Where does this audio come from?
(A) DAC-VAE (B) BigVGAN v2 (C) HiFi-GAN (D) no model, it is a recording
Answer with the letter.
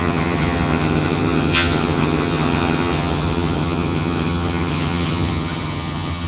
C